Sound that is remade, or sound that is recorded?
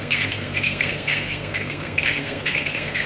remade